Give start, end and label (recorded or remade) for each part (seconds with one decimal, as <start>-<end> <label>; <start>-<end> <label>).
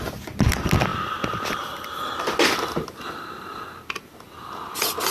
0.0-5.1 recorded